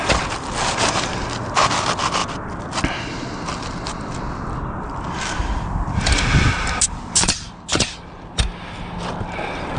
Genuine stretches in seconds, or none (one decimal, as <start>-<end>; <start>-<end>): 0.0-9.8